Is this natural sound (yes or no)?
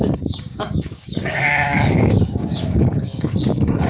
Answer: no